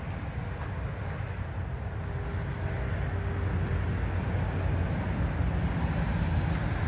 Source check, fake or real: real